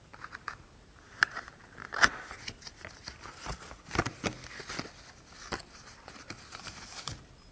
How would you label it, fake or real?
real